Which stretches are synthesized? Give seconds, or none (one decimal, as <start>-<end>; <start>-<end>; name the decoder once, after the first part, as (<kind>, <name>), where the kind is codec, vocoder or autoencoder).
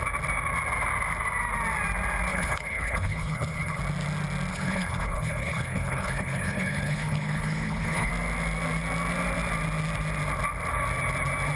2.3-3.8 (codec, HILCodec); 4.5-8.1